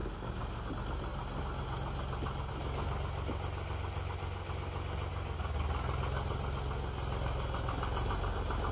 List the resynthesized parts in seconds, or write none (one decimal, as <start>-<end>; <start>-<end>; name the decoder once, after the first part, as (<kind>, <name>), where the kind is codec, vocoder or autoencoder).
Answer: 0.0-0.7 (codec, DAC); 5.1-5.6